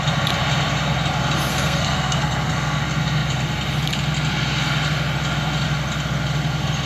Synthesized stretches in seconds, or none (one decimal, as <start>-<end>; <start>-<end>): 1.5-2.8